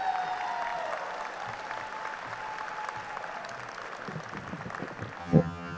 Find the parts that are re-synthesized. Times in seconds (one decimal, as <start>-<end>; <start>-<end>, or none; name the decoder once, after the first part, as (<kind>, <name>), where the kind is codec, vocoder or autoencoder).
5.2-5.8 (vocoder, HiFi-GAN)